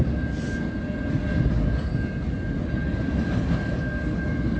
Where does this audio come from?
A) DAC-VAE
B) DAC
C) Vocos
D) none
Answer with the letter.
D